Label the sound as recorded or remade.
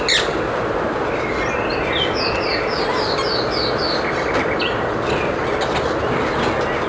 recorded